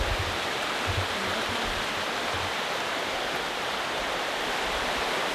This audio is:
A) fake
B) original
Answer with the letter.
B